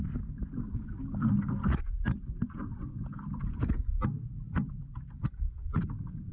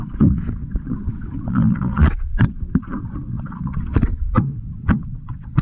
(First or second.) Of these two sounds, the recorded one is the first